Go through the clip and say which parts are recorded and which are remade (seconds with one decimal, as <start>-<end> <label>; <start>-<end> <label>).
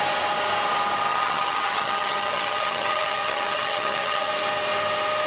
0.0-1.1 recorded; 1.1-4.3 remade; 4.3-5.3 recorded